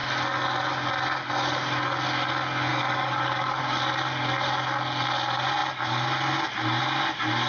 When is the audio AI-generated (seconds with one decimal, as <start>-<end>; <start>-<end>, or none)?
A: 2.7-3.6